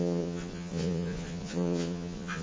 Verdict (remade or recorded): remade